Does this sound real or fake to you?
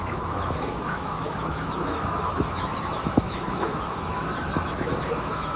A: fake